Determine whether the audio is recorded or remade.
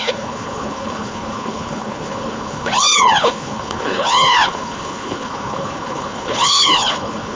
remade